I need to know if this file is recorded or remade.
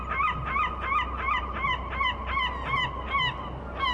recorded